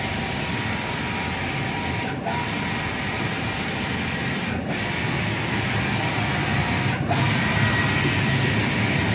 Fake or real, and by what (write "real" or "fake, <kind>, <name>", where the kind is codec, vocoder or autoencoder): real